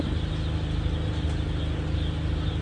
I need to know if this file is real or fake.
real